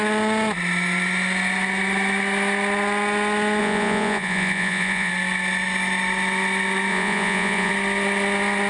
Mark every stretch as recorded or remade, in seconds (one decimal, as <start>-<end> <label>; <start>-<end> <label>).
0.0-3.6 recorded; 3.6-5.1 remade; 5.1-6.9 recorded; 6.9-7.7 remade; 7.7-8.7 recorded